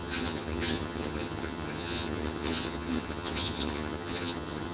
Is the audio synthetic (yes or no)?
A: yes